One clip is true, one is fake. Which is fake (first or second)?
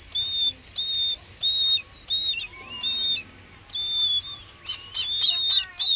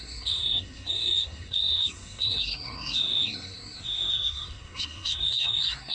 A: second